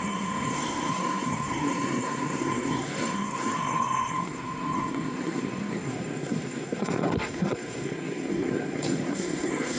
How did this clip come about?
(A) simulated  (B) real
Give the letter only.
A